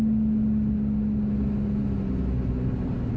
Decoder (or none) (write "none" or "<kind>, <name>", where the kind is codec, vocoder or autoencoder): none